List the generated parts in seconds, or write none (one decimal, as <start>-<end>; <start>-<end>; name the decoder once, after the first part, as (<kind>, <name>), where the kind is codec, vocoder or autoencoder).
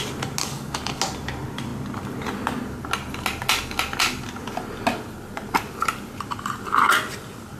0.4-1.0 (codec, DAC)